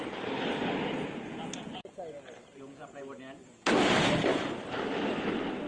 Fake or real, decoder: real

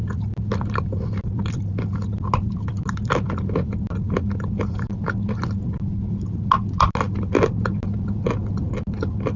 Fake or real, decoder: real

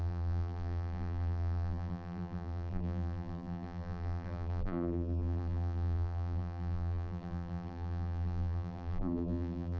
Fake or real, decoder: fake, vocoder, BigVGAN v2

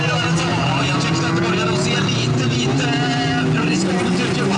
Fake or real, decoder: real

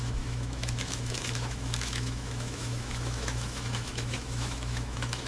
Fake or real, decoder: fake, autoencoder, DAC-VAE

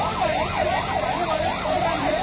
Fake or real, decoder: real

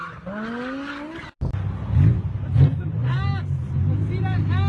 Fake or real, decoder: real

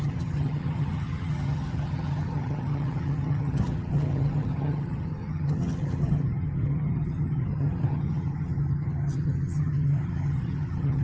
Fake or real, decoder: fake, vocoder, HiFi-GAN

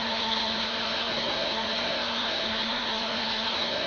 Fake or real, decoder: fake, codec, SNAC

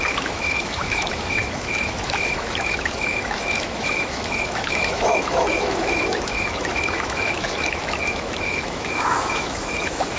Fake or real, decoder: fake, autoencoder, DAC-VAE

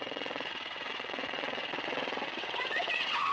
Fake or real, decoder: fake, vocoder, WaveNeXt